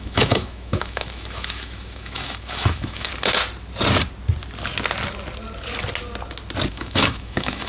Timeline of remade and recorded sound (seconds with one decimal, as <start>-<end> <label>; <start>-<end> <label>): 0.0-3.1 remade; 3.1-6.7 recorded; 6.7-7.7 remade